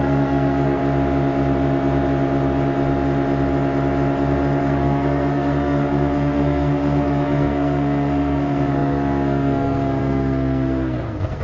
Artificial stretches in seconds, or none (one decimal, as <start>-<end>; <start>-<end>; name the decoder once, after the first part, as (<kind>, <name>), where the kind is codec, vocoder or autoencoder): 0.0-0.8 (codec, SNAC); 4.6-11.4